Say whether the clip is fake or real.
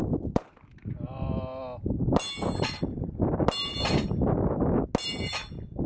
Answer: real